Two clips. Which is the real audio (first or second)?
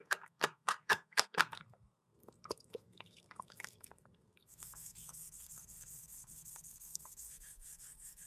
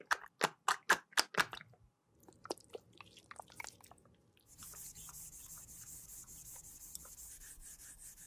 second